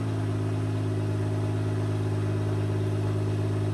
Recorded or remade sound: recorded